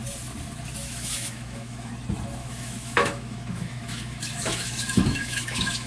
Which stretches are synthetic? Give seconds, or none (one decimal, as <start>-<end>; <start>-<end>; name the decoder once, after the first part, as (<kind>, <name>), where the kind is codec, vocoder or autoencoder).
0.8-1.9 (autoencoder, DAC-VAE); 2.4-5.9